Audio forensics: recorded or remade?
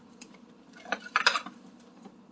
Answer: remade